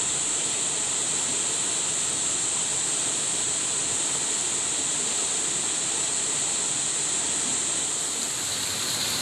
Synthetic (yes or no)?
no